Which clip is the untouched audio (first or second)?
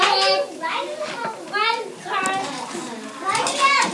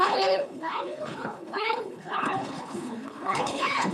first